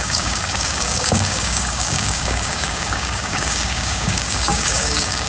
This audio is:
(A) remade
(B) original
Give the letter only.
A